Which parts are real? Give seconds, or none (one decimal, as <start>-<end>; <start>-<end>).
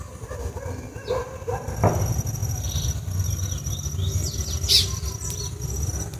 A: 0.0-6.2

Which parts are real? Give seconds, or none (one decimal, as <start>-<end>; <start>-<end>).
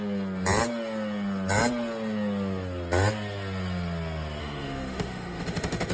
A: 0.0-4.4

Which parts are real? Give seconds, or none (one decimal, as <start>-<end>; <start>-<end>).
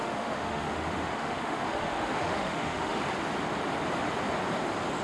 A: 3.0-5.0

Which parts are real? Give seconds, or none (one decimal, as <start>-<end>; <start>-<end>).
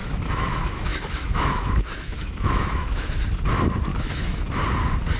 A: 3.1-3.9; 4.5-5.2